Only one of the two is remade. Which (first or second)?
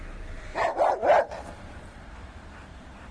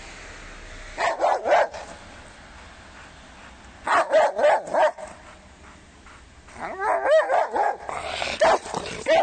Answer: first